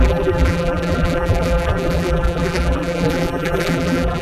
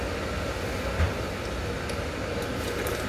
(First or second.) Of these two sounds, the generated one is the first